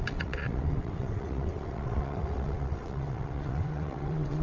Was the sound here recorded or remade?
remade